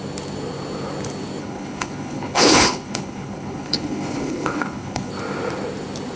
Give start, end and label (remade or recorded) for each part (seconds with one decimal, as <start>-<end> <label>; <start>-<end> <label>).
0.0-1.4 recorded; 1.4-5.1 remade; 5.1-6.2 recorded